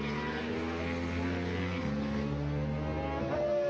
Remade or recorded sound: recorded